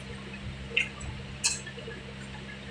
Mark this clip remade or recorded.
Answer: recorded